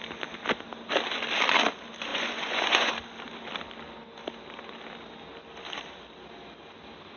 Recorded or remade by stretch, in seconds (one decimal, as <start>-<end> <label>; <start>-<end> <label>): 0.0-2.1 recorded; 2.1-2.9 remade; 2.9-7.2 recorded

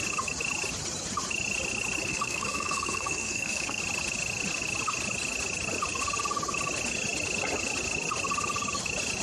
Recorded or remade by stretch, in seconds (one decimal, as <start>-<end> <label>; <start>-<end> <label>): 0.0-2.1 recorded; 2.1-3.8 remade; 3.8-9.2 recorded

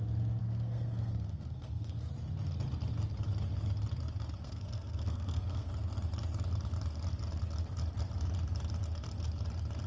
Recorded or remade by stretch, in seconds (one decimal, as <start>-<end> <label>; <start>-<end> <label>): 0.0-0.4 recorded; 0.4-2.1 remade; 2.1-4.4 recorded; 4.4-5.7 remade; 5.7-9.9 recorded

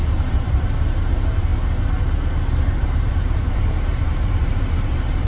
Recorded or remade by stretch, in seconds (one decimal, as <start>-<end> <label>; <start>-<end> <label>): 0.0-1.5 remade; 1.5-2.8 recorded; 2.8-5.3 remade

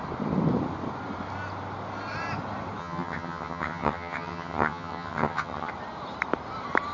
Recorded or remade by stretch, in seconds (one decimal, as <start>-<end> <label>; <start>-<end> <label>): 0.0-2.8 recorded; 2.8-5.7 remade; 5.7-6.9 recorded

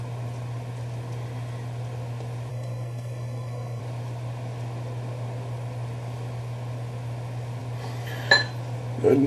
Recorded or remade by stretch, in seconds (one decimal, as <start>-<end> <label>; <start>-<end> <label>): 0.0-2.5 recorded; 2.5-3.8 remade; 3.8-9.3 recorded